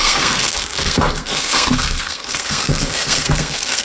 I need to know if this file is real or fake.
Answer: fake